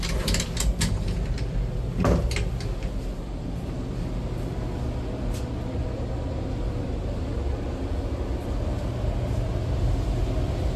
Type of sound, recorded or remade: recorded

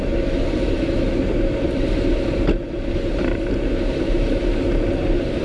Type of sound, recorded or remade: remade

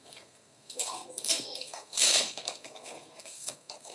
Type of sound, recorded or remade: remade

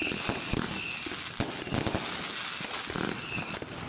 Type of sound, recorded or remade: recorded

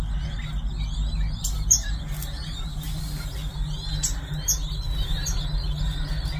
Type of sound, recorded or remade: recorded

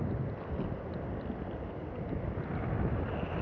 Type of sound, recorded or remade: recorded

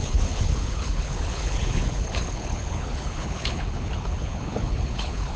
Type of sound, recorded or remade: remade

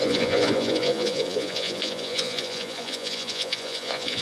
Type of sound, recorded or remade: remade